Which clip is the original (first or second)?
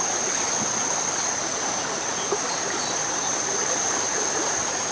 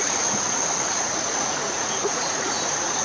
first